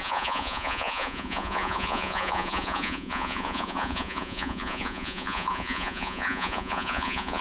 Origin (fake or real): fake